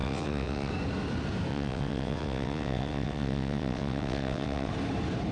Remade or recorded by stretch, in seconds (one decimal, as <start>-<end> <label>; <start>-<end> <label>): 0.0-0.7 remade; 0.7-1.5 recorded; 1.5-4.7 remade; 4.7-5.3 recorded